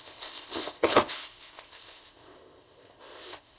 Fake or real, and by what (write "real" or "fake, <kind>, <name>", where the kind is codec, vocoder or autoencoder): fake, codec, ZipCodec